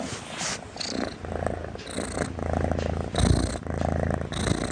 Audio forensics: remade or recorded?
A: recorded